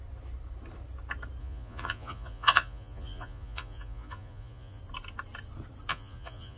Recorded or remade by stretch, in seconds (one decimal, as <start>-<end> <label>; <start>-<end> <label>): 0.0-1.4 recorded; 1.4-4.8 remade; 4.8-5.9 recorded; 5.9-6.6 remade